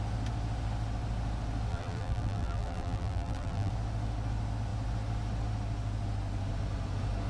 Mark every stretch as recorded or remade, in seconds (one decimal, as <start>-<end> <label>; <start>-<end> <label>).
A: 0.0-1.7 recorded; 1.7-3.7 remade; 3.7-7.3 recorded